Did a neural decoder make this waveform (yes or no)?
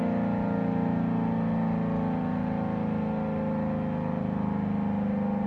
no